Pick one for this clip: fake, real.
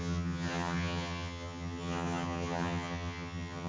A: fake